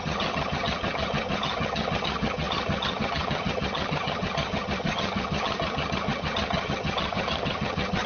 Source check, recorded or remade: remade